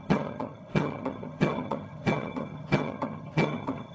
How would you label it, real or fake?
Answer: fake